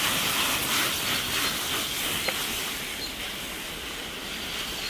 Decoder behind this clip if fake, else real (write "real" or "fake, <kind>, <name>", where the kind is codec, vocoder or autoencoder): real